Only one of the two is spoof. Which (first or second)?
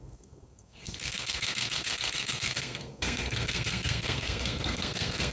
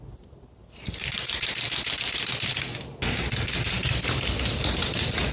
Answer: first